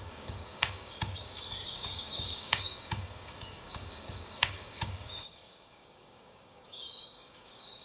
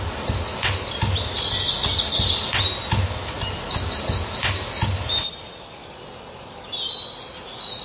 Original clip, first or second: second